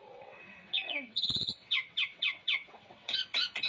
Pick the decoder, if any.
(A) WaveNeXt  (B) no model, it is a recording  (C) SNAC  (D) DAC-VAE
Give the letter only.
A